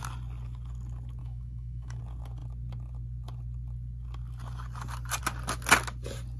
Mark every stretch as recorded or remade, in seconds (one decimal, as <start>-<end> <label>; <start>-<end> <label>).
0.0-1.2 recorded; 1.2-2.0 remade; 2.0-6.4 recorded